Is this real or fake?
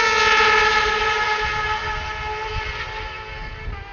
real